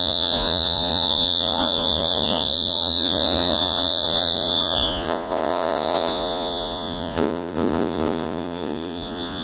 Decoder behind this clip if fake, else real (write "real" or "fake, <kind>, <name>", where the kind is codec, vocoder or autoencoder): fake, vocoder, Vocos